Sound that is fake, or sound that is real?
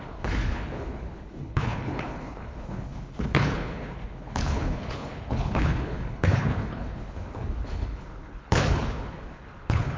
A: fake